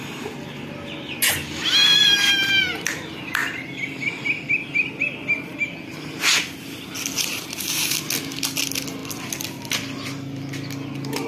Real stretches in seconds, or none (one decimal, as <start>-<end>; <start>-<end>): 0.0-11.3